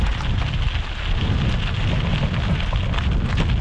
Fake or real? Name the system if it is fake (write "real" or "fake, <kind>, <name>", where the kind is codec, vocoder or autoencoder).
real